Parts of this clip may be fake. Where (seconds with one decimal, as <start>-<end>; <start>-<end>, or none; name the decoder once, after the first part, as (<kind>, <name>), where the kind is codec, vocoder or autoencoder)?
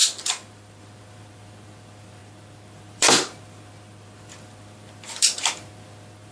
0.0-6.3 (vocoder, BigVGAN v2)